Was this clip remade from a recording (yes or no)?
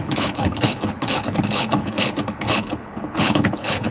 yes